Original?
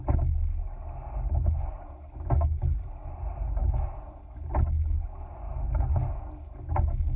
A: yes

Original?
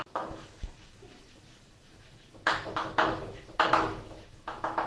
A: no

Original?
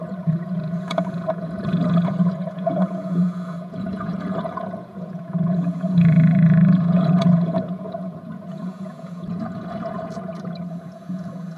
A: no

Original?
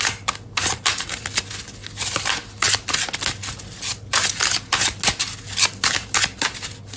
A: yes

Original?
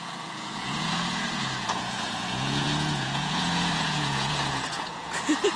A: no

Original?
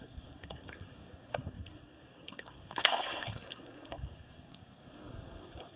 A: no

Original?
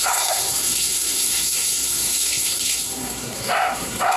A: no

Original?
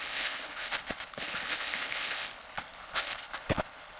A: no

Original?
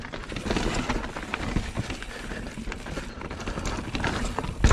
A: yes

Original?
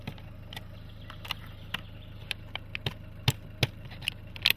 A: no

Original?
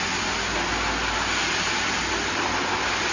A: yes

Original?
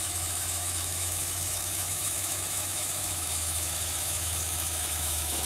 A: no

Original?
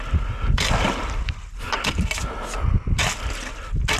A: yes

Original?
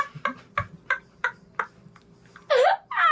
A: yes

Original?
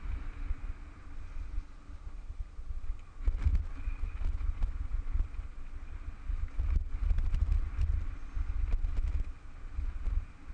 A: yes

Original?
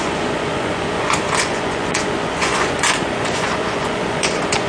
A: no